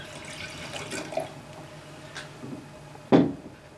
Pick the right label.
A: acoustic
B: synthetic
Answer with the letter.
A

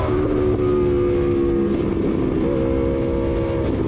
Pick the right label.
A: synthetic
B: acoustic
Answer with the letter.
B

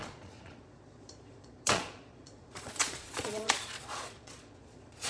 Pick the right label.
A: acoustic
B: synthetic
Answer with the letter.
B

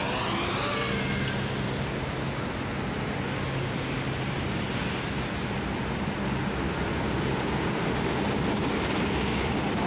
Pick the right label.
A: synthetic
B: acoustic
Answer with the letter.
B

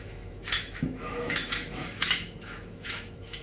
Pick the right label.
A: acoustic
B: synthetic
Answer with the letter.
B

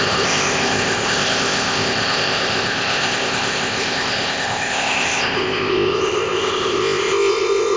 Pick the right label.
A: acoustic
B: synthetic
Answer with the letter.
B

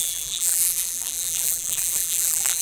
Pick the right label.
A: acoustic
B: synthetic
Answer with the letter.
B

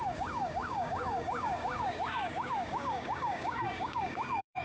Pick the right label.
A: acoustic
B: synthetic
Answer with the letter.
B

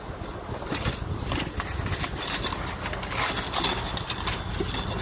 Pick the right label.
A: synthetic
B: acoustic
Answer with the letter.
B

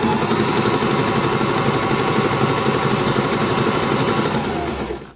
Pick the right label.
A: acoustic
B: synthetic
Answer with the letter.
A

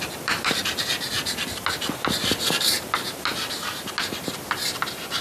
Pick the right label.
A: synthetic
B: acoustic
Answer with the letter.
B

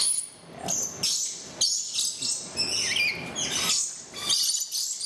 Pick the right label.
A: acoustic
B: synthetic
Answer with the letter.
A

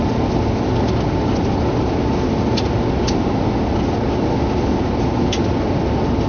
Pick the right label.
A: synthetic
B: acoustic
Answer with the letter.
B